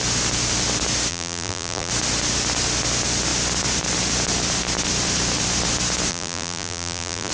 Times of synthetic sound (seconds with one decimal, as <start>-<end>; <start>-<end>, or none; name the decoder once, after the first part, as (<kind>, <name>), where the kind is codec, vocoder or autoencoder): 1.1-1.9 (vocoder, BigVGAN v2); 6.1-7.3